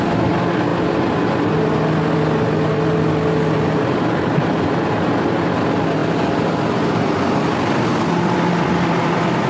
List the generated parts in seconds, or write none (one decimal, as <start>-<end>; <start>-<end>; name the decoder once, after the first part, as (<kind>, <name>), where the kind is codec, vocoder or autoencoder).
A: none